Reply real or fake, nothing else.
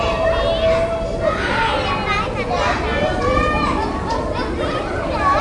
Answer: real